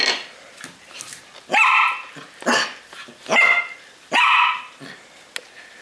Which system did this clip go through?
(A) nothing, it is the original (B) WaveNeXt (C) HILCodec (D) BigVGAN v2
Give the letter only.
A